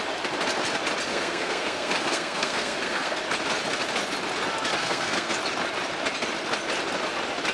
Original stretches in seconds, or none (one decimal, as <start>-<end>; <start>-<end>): 0.0-1.1; 3.2-4.8; 5.3-7.5